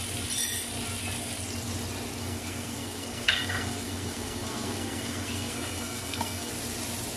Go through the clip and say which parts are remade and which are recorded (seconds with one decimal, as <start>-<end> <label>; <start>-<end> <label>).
0.0-2.2 recorded; 2.2-6.5 remade; 6.5-7.2 recorded